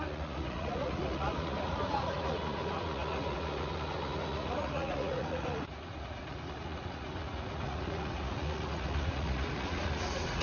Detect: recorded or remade remade